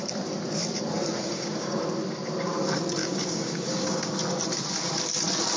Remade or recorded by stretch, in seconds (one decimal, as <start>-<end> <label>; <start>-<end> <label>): 0.0-1.2 recorded; 1.2-1.8 remade; 1.8-3.0 recorded; 3.0-4.0 remade; 4.0-5.6 recorded